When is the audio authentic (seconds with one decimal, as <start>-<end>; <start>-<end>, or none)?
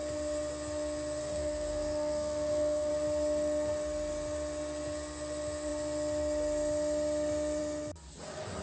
0.0-1.2; 2.9-8.6